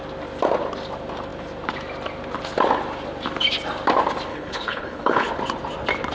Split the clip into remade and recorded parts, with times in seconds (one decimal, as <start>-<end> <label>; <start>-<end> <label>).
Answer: 0.0-4.3 recorded; 4.3-5.3 remade; 5.3-6.1 recorded